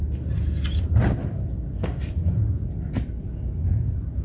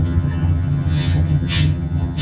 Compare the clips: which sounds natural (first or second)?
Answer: first